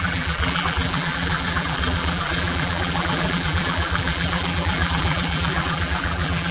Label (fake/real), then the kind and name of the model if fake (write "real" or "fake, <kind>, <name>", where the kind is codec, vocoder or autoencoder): fake, vocoder, BigVGAN v2